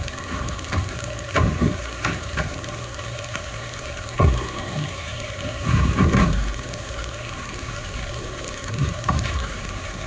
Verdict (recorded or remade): remade